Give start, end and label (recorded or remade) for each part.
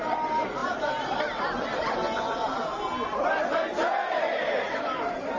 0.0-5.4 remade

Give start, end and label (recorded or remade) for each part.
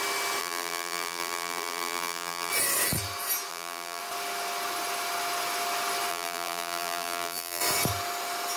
0.0-0.4 recorded; 0.4-2.5 remade; 2.5-3.5 recorded; 3.5-4.0 remade; 4.0-6.1 recorded; 6.1-7.6 remade; 7.6-8.6 recorded